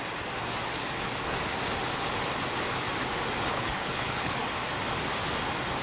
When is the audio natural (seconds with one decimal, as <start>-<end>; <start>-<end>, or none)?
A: 0.0-3.5; 4.4-5.8